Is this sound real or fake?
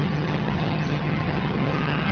fake